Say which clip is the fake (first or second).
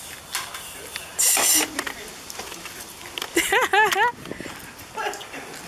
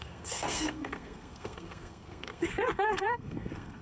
second